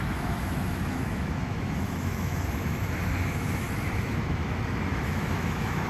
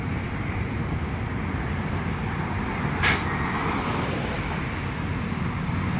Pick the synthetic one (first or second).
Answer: first